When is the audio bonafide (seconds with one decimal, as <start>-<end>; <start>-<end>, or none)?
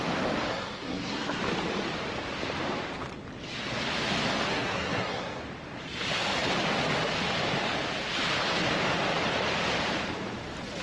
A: 0.0-0.5; 1.4-4.5; 5.4-10.8